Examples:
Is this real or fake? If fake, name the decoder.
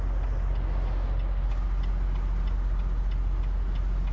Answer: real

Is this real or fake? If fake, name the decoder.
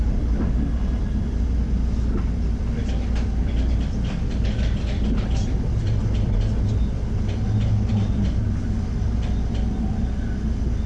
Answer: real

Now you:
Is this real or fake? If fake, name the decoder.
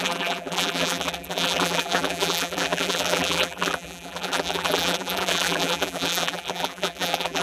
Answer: fake, vocoder, BigVGAN v2